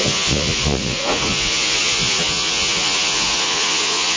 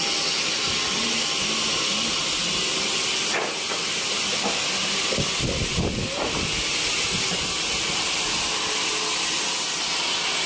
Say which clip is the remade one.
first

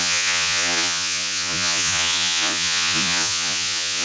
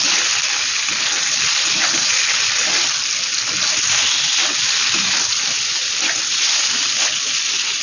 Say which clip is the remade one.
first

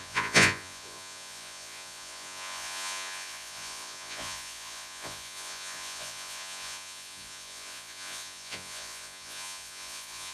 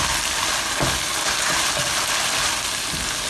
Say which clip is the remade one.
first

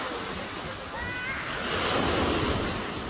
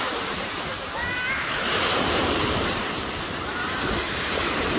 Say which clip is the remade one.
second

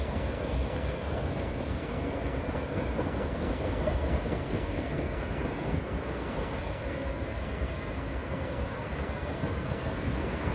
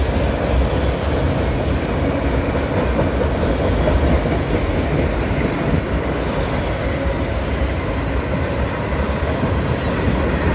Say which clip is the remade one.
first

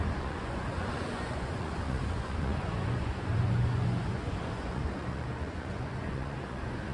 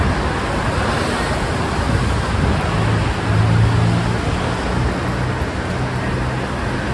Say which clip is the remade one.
first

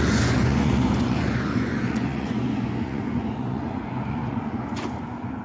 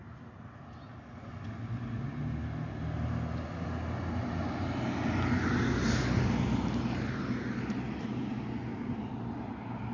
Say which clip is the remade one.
first